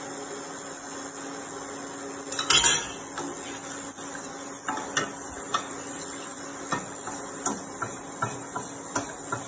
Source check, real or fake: real